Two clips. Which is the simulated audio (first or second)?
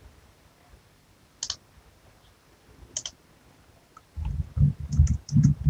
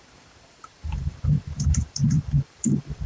second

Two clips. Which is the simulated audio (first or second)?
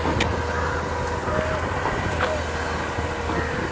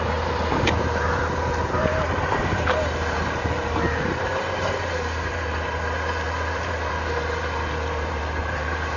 second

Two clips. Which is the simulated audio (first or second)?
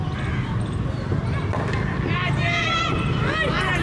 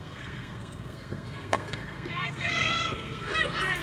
second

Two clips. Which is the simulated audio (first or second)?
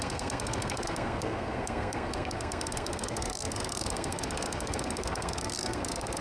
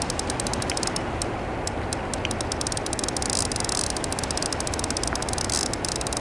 first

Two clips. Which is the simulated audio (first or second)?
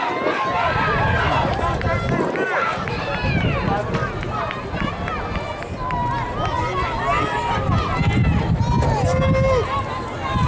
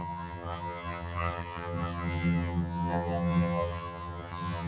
second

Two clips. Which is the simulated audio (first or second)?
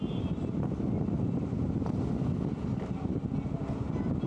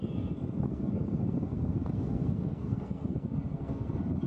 second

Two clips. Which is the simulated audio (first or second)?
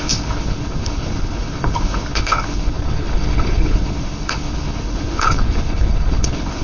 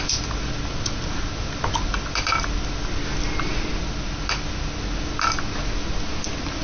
first